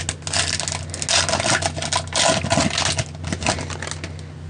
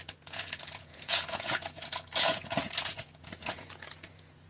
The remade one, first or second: second